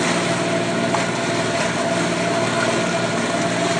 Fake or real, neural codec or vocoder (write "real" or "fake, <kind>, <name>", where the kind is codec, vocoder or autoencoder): real